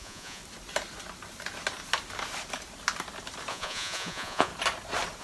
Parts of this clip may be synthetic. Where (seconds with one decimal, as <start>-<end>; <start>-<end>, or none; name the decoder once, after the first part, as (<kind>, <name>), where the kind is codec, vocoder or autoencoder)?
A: 0.0-0.4 (vocoder, Vocos); 3.5-4.5